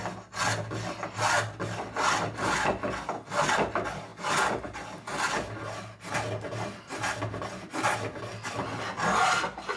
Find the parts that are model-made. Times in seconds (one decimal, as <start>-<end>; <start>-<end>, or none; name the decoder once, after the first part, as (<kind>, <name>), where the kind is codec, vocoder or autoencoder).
none